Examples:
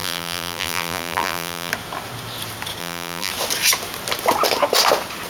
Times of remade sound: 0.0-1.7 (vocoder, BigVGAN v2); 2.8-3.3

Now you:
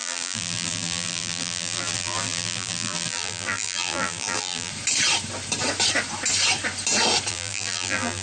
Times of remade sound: 0.0-4.7 (vocoder, BigVGAN v2); 7.3-8.2

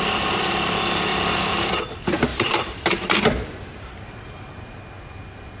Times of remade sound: 1.1-1.7 (vocoder, BigVGAN v2); 2.3-4.8

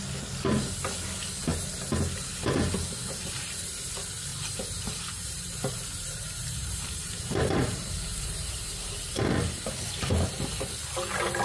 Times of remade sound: 4.3-8.9 (vocoder, BigVGAN v2)

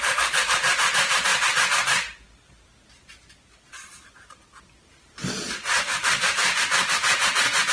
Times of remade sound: 0.0-1.3 (vocoder, BigVGAN v2); 4.6-7.7

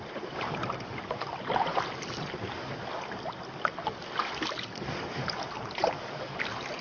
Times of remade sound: 0.0-1.7 (vocoder, BigVGAN v2); 5.5-6.8